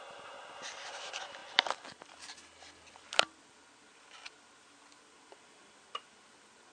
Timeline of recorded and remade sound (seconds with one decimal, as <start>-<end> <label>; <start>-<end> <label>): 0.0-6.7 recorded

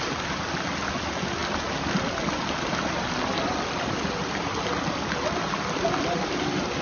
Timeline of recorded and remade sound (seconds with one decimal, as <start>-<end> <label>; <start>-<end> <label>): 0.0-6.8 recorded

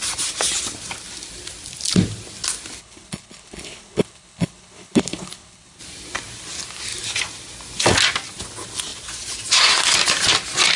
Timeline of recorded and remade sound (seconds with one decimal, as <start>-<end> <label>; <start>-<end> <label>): 0.0-2.8 recorded; 2.8-5.8 remade; 5.8-10.8 recorded

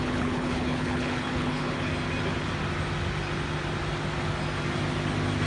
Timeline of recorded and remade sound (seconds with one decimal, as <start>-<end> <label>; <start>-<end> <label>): 0.0-1.9 remade; 1.9-5.5 recorded

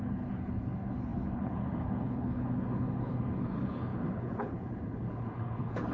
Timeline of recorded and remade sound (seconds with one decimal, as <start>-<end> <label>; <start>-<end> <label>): 0.0-5.9 remade

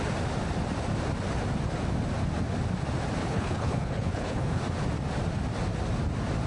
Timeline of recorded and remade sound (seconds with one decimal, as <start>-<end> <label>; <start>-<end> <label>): 0.0-3.2 recorded; 3.2-4.6 remade; 4.6-6.5 recorded

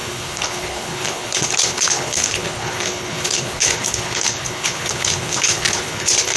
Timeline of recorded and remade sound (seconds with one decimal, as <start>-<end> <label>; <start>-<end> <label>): 0.0-6.4 remade

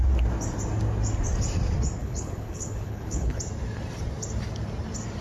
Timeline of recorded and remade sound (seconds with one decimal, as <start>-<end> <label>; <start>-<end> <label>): 0.0-2.0 recorded; 2.0-3.4 remade; 3.4-5.2 recorded